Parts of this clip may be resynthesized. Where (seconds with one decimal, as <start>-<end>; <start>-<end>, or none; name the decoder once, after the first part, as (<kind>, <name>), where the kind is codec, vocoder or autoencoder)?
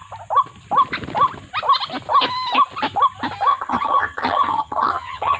3.5-5.4 (vocoder, HiFi-GAN)